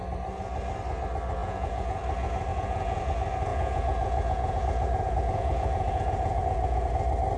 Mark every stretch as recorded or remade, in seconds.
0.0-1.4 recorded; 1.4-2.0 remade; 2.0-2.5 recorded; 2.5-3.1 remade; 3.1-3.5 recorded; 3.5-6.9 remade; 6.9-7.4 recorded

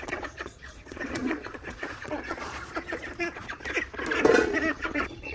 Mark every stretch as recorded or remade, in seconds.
0.0-3.4 remade; 3.4-4.3 recorded; 4.3-5.3 remade

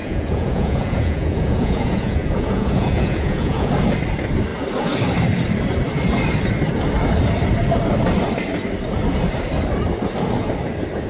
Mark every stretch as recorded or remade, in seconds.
0.0-3.7 remade; 3.7-11.1 recorded